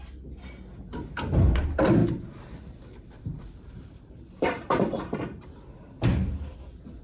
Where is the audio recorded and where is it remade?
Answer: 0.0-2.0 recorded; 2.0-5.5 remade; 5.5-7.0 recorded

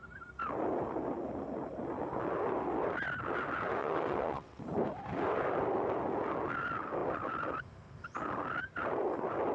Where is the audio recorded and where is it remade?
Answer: 0.0-3.8 recorded; 3.8-4.6 remade; 4.6-9.5 recorded